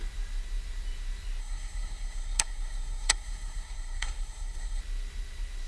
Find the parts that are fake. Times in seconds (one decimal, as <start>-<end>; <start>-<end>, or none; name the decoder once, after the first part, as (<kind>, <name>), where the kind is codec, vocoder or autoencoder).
1.4-4.8 (codec, SNAC)

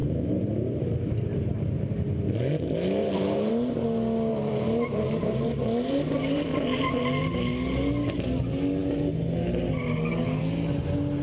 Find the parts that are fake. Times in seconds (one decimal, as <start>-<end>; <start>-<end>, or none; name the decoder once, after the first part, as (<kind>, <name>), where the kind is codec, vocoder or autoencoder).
0.0-1.9 (vocoder, BigVGAN v2); 3.0-3.5; 4.3-6.8

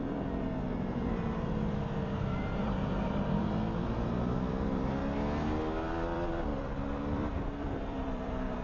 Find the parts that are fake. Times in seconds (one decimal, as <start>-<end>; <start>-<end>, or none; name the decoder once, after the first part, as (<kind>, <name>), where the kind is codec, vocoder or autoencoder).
0.0-5.0 (vocoder, BigVGAN v2); 5.9-6.5; 7.0-8.6

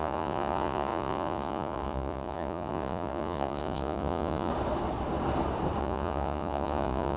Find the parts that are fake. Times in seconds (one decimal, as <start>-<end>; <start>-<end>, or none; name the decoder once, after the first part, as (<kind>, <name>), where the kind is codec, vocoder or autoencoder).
0.0-4.5 (vocoder, Vocos); 5.8-7.2

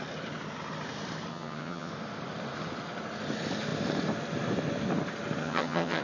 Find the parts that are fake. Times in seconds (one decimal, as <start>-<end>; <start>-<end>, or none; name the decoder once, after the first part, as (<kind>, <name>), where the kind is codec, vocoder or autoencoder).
1.3-1.9 (vocoder, HiFi-GAN); 5.4-6.0

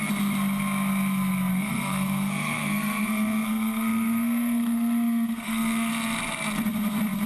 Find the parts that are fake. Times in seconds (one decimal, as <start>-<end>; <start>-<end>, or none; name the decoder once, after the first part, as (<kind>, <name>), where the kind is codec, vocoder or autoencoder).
1.5-5.9 (codec, SNAC)